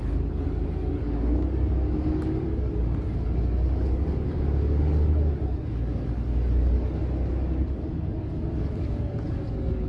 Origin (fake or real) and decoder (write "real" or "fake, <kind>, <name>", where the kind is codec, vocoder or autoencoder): fake, codec, DAC